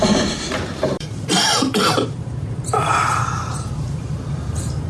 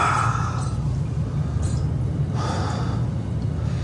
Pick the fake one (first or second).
first